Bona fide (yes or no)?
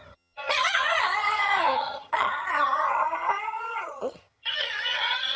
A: no